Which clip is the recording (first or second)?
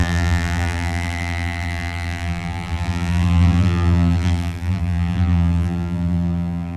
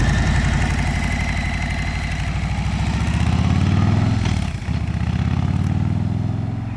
second